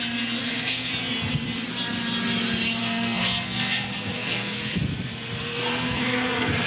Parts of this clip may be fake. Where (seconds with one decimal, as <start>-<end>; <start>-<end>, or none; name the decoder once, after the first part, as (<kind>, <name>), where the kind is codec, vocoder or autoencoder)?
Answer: 0.4-0.9 (codec, SNAC); 2.8-4.8; 5.7-6.7